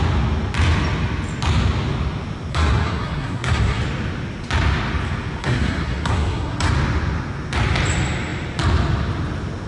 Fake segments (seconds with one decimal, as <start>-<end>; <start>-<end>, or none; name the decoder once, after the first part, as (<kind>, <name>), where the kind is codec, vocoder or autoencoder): 2.5-3.8 (codec, SNAC); 5.4-6.7